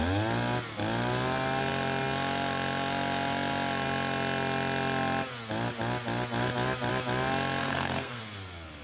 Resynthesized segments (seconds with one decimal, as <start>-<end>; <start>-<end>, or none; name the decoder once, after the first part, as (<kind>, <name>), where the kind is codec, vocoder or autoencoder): 7.6-8.2 (codec, SNAC)